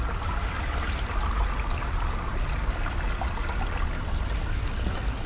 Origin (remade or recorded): recorded